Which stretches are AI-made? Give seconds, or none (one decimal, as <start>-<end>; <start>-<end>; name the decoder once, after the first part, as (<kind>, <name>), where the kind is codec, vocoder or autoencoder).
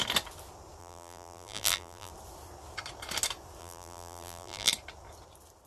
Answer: 0.8-2.1 (vocoder, BigVGAN v2); 3.6-4.7